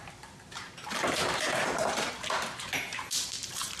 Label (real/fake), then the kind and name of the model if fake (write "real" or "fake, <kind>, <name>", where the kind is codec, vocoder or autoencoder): fake, vocoder, BigVGAN v2